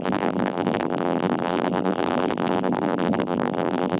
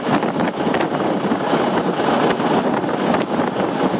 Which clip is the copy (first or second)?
first